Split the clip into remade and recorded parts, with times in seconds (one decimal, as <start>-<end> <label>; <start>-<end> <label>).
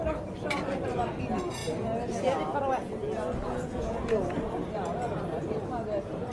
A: 0.0-6.3 recorded